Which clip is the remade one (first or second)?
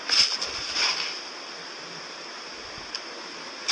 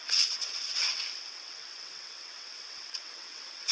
second